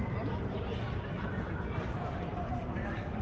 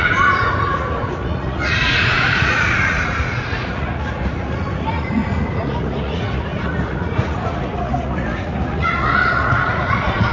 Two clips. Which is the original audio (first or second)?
first